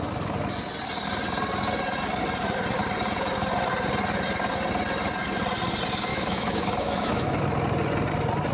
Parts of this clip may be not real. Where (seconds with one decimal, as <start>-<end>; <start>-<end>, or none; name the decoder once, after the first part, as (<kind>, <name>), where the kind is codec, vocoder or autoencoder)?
6.1-7.4 (autoencoder, DAC-VAE)